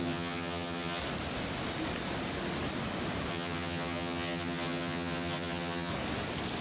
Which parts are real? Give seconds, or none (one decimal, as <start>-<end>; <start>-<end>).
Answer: 1.0-3.3; 5.9-6.6